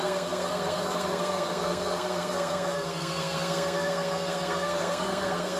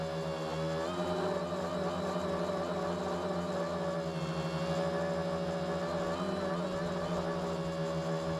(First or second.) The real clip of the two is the second